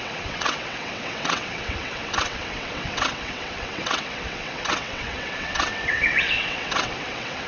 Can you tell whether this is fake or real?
fake